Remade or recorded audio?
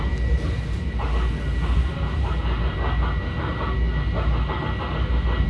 recorded